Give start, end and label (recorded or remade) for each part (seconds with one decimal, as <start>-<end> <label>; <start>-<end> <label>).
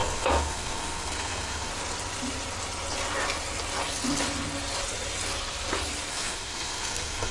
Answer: 0.0-1.7 remade; 1.7-6.1 recorded; 6.1-7.3 remade